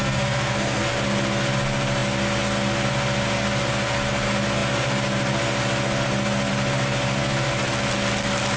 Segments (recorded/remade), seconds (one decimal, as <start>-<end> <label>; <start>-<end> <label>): 0.0-0.8 remade; 0.8-8.6 recorded